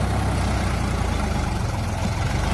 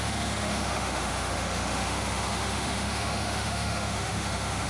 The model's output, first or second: second